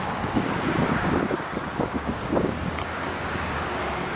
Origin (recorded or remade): remade